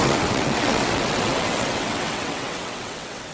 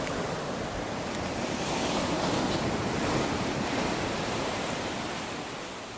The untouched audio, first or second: second